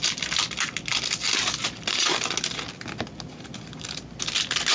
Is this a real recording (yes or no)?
yes